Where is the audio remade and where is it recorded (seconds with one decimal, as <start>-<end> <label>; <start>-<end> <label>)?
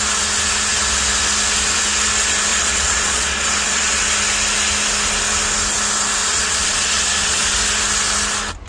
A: 0.0-2.5 recorded; 2.5-4.0 remade; 4.0-6.2 recorded; 6.2-7.5 remade; 7.5-8.7 recorded